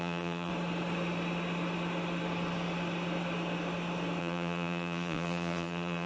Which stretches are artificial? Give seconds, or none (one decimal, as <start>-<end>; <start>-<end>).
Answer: 0.0-0.5; 4.2-6.1